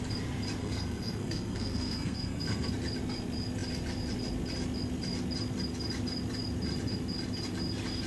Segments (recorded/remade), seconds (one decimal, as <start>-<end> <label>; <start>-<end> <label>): 0.0-0.6 recorded; 0.6-2.7 remade; 2.7-8.1 recorded

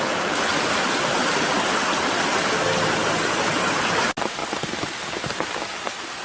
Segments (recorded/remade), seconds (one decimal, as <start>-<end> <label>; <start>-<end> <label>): 0.0-6.2 recorded

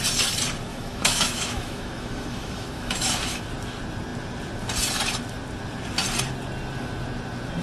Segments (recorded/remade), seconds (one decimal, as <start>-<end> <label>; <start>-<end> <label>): 0.0-0.7 recorded; 0.7-3.4 remade; 3.4-7.6 recorded

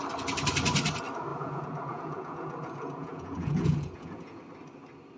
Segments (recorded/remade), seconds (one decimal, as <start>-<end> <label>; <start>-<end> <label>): 0.0-1.3 recorded; 1.3-4.4 remade; 4.4-5.2 recorded

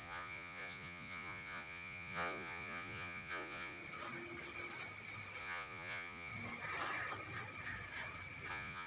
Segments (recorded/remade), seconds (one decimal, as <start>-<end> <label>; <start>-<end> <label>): 0.0-3.8 remade; 3.8-5.4 recorded; 5.4-6.3 remade; 6.3-8.5 recorded; 8.5-8.9 remade

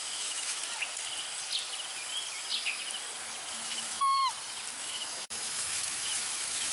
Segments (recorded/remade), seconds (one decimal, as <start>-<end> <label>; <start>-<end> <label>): 0.0-0.6 remade; 0.6-3.5 recorded; 3.5-4.2 remade; 4.2-4.8 recorded; 4.8-6.7 remade

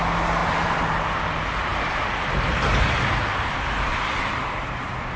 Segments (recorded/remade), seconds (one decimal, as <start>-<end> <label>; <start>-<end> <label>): 0.0-5.2 recorded